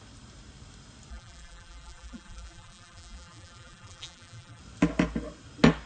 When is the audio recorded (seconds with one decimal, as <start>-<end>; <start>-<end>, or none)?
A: 0.0-1.1; 4.6-5.9